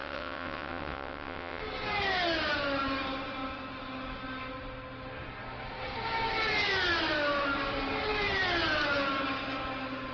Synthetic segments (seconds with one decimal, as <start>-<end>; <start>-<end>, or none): 0.0-1.6